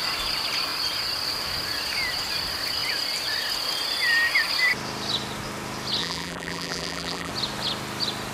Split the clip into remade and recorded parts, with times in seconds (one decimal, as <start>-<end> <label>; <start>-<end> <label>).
0.0-6.0 recorded; 6.0-7.3 remade; 7.3-8.3 recorded